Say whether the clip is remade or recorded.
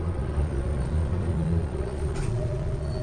remade